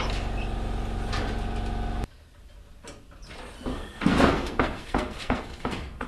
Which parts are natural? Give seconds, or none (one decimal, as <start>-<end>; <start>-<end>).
0.0-3.7